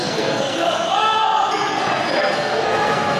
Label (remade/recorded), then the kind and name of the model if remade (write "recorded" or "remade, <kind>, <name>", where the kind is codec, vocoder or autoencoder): remade, codec, SNAC